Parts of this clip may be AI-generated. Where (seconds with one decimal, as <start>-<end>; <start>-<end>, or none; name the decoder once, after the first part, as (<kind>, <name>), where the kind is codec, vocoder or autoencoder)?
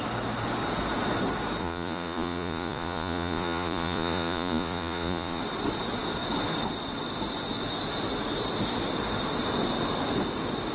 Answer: 1.6-5.4 (vocoder, Vocos)